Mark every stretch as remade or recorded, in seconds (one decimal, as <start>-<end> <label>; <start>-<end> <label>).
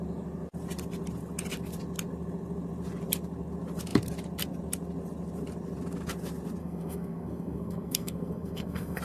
0.0-6.6 recorded; 6.6-9.0 remade